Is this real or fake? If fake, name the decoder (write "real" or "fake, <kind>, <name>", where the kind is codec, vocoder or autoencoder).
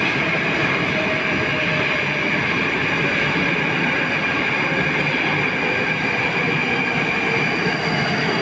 real